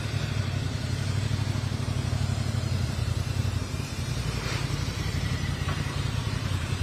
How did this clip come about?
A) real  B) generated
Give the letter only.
B